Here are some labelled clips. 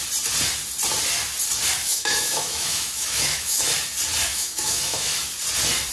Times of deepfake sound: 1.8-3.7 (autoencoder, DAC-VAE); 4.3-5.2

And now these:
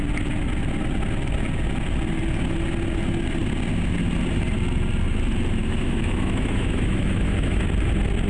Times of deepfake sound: 5.6-7.6 (autoencoder, DAC-VAE)